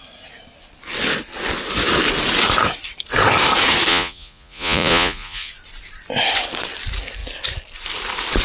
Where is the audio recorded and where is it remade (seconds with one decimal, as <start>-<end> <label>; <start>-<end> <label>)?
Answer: 0.0-3.9 recorded; 3.9-5.5 remade; 5.5-8.4 recorded